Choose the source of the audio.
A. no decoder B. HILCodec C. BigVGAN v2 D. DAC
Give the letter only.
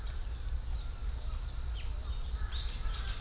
A